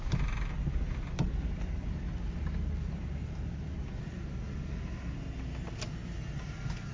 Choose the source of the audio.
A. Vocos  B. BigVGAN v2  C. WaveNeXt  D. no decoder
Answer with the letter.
D